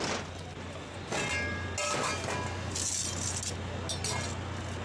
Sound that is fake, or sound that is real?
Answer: real